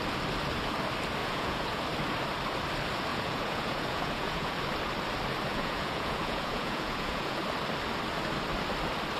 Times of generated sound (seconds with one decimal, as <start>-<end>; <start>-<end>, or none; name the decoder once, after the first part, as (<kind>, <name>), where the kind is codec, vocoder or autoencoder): 1.2-1.9 (vocoder, Vocos); 3.1-4.6; 5.5-7.4